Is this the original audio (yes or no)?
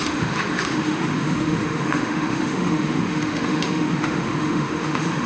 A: no